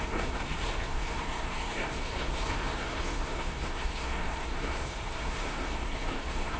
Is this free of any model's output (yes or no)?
no